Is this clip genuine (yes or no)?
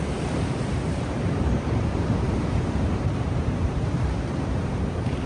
no